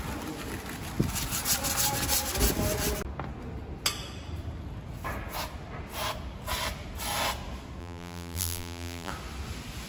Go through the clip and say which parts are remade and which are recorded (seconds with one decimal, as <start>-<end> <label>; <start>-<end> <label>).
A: 0.0-7.8 recorded; 7.8-9.1 remade; 9.1-9.9 recorded